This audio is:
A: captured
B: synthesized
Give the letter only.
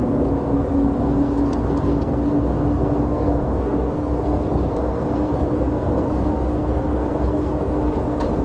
B